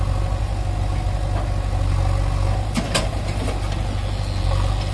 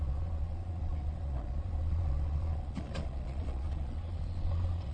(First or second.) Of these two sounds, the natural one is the first